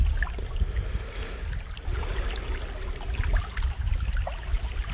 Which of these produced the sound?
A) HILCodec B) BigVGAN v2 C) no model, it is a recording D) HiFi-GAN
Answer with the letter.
C